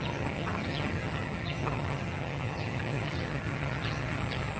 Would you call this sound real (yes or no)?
no